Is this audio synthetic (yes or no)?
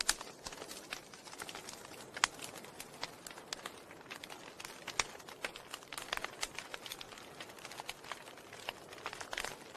no